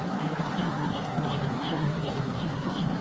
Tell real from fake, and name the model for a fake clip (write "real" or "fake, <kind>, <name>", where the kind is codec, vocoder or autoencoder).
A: fake, codec, SNAC